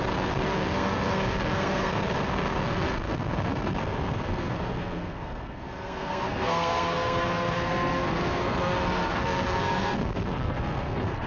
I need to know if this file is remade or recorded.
remade